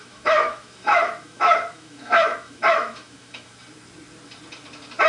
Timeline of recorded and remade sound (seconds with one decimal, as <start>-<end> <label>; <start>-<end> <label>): 0.0-3.5 remade; 3.5-5.1 recorded